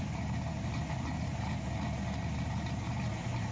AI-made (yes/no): no